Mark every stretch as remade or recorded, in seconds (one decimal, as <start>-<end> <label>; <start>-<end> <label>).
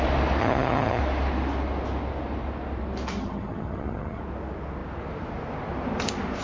0.0-0.4 recorded; 0.4-1.0 remade; 1.0-3.2 recorded; 3.2-4.2 remade; 4.2-6.4 recorded